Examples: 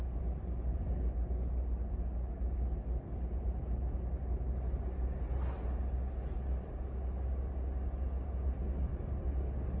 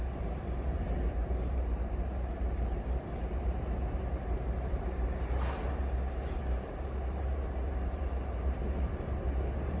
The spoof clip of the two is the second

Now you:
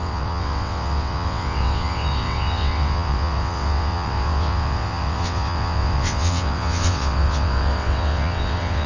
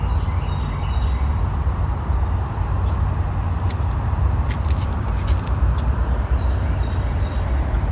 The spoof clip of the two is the first